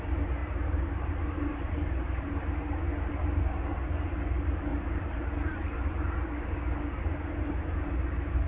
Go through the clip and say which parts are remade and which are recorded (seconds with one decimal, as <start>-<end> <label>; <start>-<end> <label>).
0.0-0.4 recorded; 0.4-1.1 remade; 1.1-1.5 recorded; 1.5-2.4 remade; 2.4-4.7 recorded; 4.7-5.3 remade; 5.3-8.5 recorded

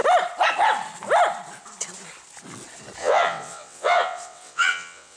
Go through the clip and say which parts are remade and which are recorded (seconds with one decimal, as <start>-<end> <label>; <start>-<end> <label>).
0.0-3.0 recorded; 3.0-5.2 remade

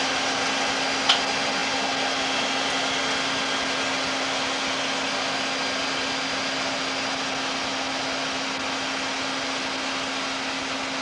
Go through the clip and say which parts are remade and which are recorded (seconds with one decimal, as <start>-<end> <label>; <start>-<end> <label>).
0.0-11.0 recorded

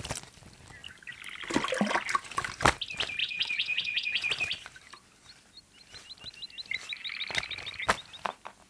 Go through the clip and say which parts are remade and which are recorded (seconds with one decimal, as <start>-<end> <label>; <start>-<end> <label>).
0.0-3.2 recorded; 3.2-4.3 remade; 4.3-8.7 recorded

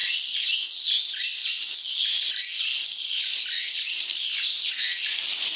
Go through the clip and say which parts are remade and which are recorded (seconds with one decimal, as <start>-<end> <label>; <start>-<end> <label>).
0.0-5.6 recorded

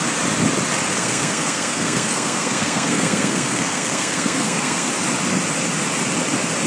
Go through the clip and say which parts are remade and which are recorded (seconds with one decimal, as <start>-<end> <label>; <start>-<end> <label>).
0.0-0.9 recorded; 0.9-4.9 remade; 4.9-6.7 recorded

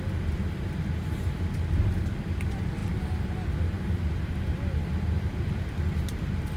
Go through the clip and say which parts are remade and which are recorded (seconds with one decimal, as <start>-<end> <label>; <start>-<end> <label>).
0.0-6.6 recorded

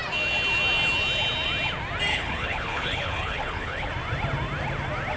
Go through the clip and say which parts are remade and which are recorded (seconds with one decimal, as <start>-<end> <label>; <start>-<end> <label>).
0.0-2.1 recorded; 2.1-3.9 remade; 3.9-5.2 recorded